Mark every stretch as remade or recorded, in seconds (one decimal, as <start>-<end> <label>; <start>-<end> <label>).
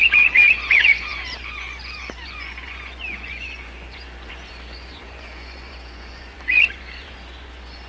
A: 0.0-7.9 remade